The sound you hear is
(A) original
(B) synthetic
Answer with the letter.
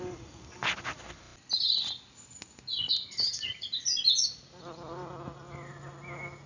A